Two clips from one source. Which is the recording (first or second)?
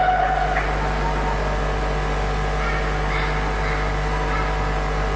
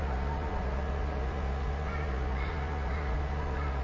first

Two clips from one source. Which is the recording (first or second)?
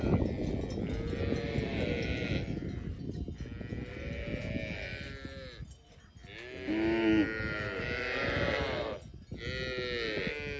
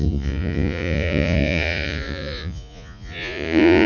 first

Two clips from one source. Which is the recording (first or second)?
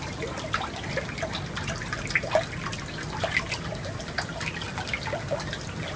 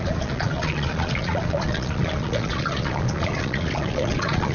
first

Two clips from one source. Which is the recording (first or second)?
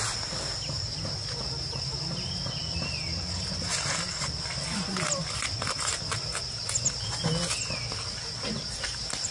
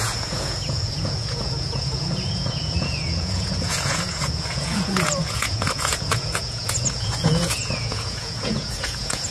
first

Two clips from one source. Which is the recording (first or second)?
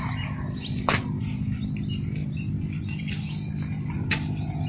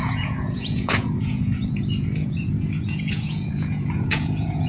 first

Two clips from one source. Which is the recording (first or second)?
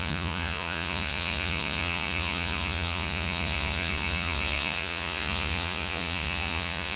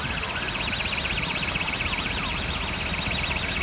second